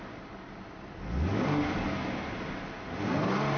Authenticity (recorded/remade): recorded